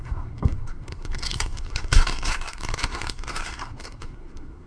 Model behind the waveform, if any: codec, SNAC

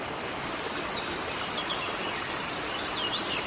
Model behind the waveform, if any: none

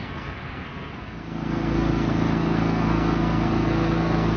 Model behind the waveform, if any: codec, SNAC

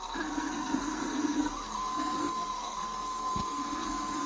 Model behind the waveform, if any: codec, SNAC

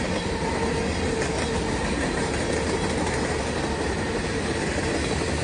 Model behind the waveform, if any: none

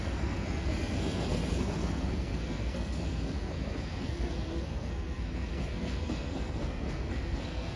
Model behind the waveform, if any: codec, SNAC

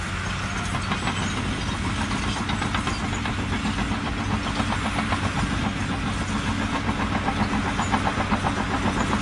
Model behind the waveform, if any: none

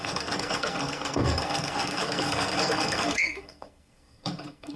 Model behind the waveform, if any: codec, SNAC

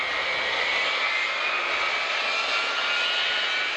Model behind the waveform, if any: none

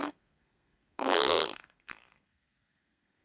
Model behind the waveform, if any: codec, SNAC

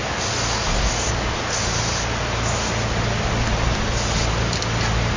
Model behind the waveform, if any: none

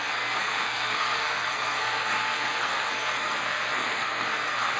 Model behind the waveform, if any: codec, SNAC